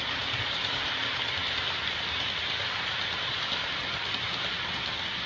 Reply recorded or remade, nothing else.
recorded